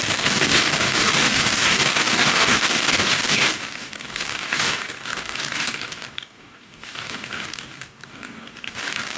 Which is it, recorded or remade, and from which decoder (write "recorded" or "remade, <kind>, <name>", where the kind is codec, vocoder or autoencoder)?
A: remade, codec, DAC